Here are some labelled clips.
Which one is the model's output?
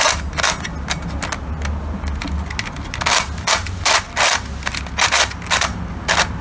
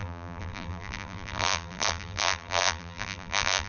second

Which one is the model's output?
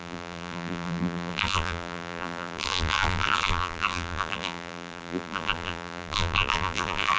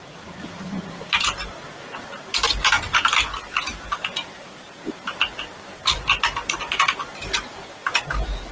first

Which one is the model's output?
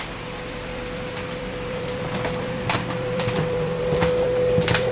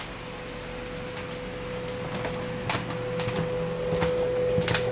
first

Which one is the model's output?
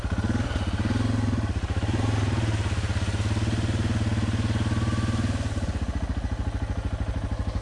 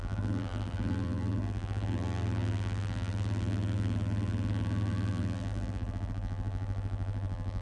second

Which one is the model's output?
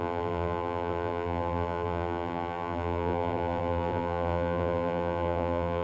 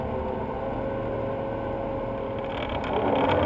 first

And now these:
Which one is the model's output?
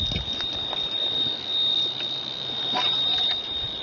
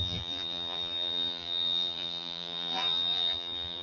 second